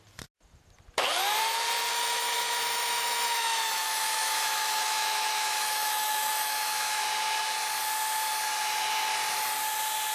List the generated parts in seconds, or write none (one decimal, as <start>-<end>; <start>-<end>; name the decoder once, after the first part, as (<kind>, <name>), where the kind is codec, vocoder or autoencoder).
1.9-7.0 (autoencoder, DAC-VAE)